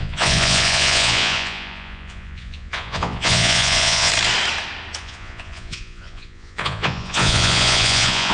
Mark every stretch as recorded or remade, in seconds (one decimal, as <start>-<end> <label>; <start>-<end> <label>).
0.0-4.1 remade; 4.1-5.0 recorded; 5.0-8.3 remade